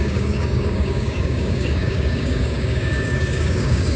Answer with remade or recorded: remade